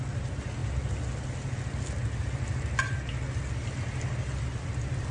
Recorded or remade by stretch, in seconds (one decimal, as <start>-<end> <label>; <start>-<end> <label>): 0.0-5.1 recorded